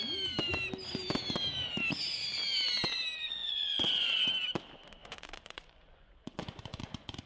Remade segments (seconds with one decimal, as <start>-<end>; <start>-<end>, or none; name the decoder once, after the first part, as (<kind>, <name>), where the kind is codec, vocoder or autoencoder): 3.4-4.2 (vocoder, Vocos); 5.0-7.3